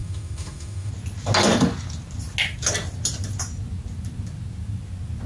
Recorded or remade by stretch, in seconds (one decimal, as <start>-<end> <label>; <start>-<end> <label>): 0.0-0.9 remade; 0.9-5.3 recorded